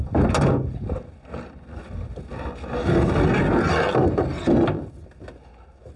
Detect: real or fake real